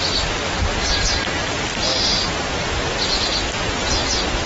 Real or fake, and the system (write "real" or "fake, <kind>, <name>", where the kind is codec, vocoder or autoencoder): real